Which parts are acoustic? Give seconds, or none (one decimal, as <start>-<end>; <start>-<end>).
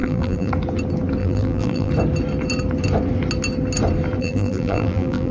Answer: 0.5-1.2; 1.9-4.2